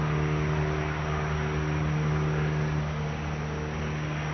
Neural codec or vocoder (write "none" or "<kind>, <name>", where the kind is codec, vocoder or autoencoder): none